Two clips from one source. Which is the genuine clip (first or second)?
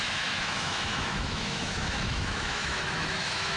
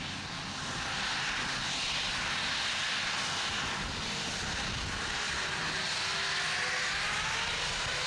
second